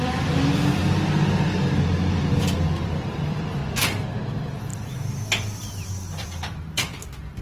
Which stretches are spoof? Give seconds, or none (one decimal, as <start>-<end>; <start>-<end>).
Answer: 0.0-0.8; 2.1-3.6; 4.3-7.4